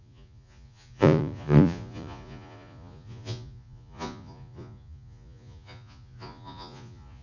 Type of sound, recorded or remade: remade